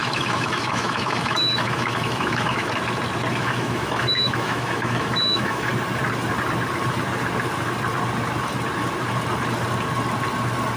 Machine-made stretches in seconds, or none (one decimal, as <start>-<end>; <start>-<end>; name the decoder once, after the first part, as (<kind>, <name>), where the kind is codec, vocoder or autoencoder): 0.0-2.7 (autoencoder, DAC-VAE); 3.3-5.7